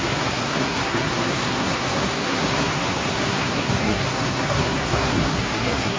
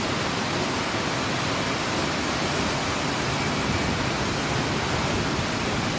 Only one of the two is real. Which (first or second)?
second